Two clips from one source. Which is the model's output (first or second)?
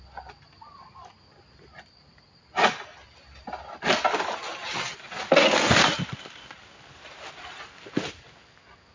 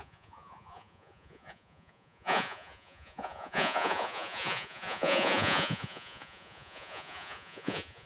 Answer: second